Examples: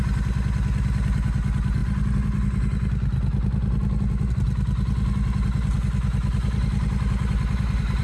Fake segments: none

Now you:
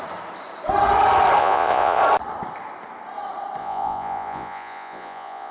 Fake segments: 1.4-2.0; 3.6-5.5